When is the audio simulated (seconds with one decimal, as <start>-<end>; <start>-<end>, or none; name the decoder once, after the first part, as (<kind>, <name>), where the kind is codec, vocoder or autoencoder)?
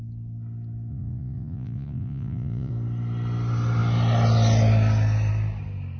0.9-2.7 (vocoder, Vocos)